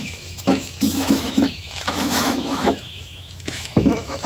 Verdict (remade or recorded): remade